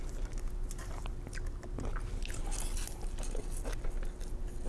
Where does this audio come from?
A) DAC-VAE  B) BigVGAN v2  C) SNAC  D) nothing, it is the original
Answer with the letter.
D